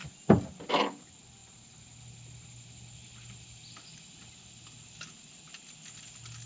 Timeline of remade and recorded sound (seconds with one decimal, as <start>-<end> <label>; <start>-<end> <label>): 0.0-6.5 recorded